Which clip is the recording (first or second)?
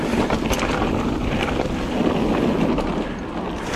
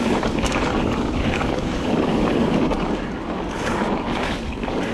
first